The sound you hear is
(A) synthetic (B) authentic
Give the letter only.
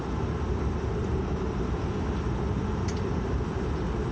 B